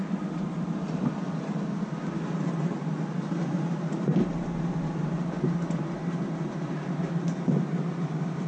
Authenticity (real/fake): real